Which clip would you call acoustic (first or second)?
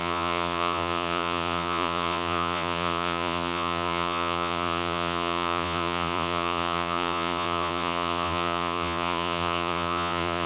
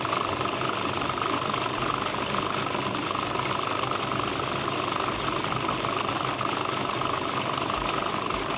second